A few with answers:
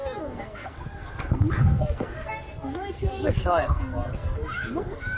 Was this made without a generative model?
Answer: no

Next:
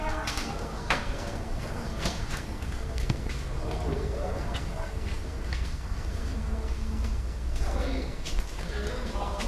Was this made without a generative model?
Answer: no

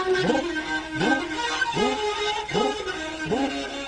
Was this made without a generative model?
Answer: yes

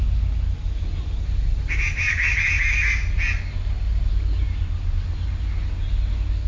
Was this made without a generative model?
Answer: yes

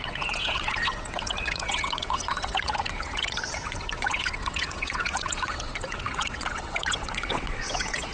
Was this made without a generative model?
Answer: no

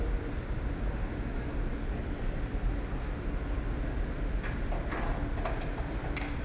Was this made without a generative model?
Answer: yes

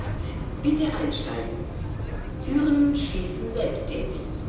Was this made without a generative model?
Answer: yes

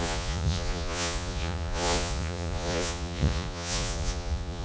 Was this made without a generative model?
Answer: no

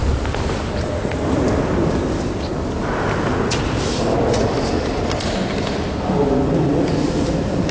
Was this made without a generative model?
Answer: yes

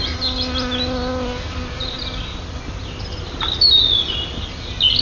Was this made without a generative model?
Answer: yes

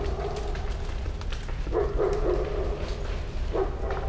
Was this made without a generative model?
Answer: yes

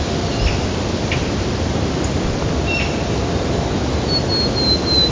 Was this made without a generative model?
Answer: yes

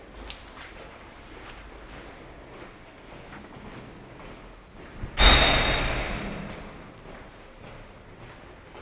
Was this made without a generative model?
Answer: yes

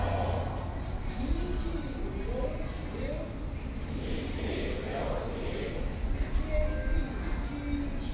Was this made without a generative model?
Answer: yes